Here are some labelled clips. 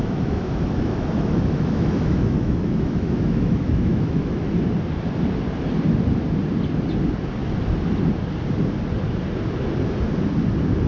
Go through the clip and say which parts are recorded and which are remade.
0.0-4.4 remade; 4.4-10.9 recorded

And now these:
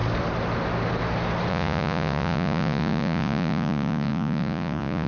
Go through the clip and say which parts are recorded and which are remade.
0.0-1.5 recorded; 1.5-5.1 remade

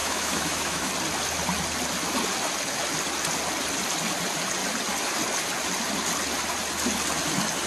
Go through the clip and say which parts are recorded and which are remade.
0.0-0.9 remade; 0.9-7.7 recorded

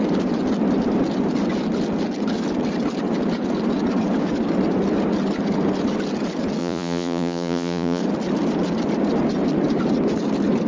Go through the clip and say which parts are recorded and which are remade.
0.0-6.6 recorded; 6.6-8.0 remade; 8.0-10.7 recorded

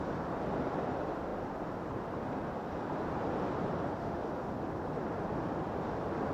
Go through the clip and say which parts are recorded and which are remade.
0.0-4.0 recorded; 4.0-4.5 remade; 4.5-6.3 recorded

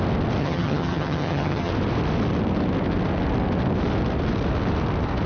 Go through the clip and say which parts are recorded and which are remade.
0.0-0.4 recorded; 0.4-1.7 remade; 1.7-5.3 recorded

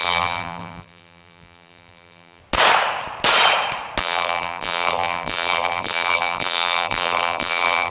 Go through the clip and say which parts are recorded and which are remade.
0.0-2.4 remade; 2.4-4.0 recorded; 4.0-7.9 remade